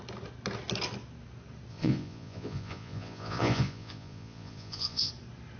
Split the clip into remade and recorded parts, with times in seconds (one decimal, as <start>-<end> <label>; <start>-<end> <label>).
0.0-1.7 recorded; 1.7-5.1 remade; 5.1-5.6 recorded